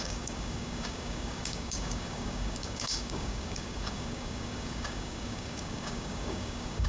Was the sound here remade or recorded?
remade